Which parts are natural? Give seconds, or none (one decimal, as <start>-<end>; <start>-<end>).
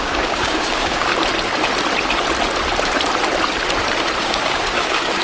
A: 1.1-4.2